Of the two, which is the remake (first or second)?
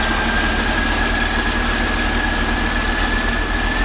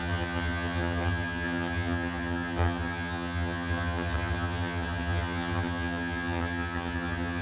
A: second